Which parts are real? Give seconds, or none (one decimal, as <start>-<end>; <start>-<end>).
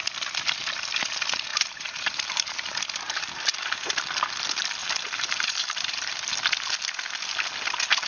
0.0-1.5; 4.0-4.8; 6.1-8.1